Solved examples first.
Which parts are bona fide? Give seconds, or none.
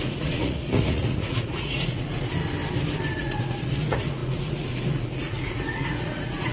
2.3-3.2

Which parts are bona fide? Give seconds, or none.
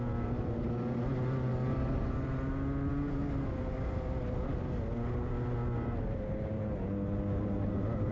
0.0-8.1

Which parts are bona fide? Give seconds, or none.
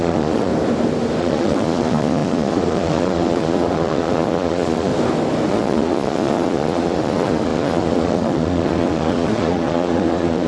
0.5-1.2; 4.9-5.5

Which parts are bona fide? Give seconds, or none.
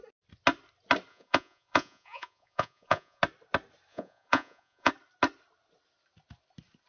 0.0-1.1; 3.2-3.9; 4.9-6.9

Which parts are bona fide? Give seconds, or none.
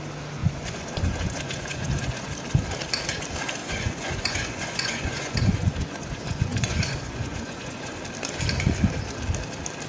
0.0-0.4; 2.3-3.6; 8.0-9.9